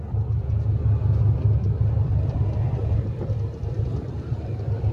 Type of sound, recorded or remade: recorded